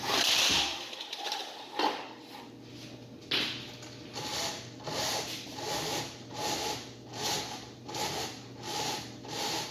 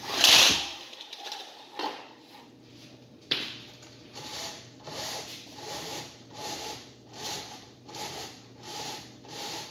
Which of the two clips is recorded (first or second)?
first